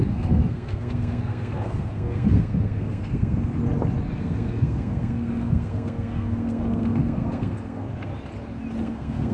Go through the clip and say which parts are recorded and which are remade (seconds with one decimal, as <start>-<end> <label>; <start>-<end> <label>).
0.0-3.5 remade; 3.5-4.2 recorded; 4.2-8.1 remade; 8.1-8.8 recorded; 8.8-9.3 remade

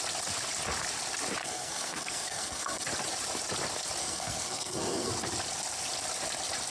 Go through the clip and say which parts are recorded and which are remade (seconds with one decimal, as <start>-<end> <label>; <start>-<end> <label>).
0.0-1.4 recorded; 1.4-2.8 remade; 2.8-4.0 recorded; 4.0-5.1 remade; 5.1-6.7 recorded

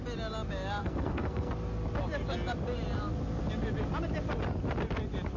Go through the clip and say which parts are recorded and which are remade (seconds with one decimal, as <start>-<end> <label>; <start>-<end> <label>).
0.0-0.8 recorded; 0.8-1.5 remade; 1.5-5.4 recorded